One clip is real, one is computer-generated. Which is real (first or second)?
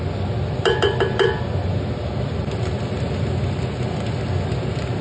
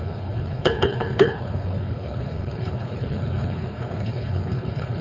first